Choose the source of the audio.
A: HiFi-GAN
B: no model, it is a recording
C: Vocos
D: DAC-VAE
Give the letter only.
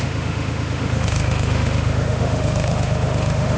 D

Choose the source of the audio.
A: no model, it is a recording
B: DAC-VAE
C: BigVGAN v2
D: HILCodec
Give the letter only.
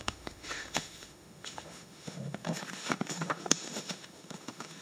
B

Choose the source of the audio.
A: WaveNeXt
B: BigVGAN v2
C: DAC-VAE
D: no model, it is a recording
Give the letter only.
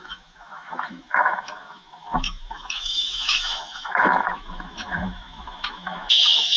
C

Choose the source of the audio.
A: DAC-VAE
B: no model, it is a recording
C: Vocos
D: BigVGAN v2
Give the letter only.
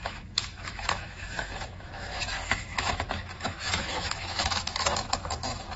A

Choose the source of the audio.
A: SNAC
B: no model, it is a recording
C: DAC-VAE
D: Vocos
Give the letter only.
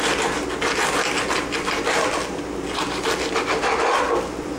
B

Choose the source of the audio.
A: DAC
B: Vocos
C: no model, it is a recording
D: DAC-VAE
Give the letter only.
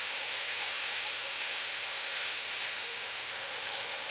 D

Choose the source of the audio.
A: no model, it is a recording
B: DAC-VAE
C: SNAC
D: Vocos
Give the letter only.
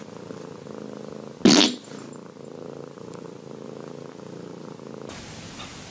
A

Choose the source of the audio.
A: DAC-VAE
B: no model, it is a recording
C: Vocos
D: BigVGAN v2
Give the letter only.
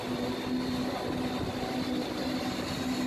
B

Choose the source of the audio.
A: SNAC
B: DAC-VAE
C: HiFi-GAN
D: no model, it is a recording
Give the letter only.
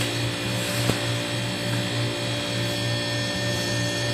D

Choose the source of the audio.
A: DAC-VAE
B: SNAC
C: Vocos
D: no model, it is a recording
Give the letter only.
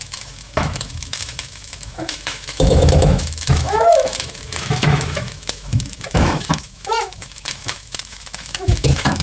A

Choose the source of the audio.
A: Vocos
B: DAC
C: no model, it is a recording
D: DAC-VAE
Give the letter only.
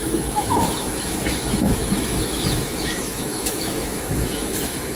D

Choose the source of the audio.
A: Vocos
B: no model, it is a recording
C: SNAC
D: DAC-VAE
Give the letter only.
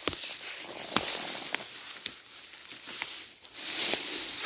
B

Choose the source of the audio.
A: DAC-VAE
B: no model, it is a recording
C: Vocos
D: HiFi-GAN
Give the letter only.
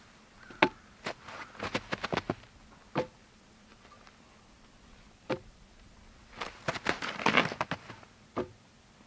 B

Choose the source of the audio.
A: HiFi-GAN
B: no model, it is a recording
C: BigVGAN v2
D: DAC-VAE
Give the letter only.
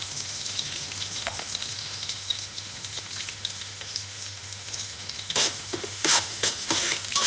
D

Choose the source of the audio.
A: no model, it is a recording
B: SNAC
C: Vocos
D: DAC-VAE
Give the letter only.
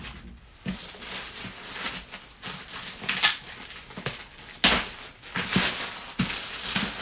A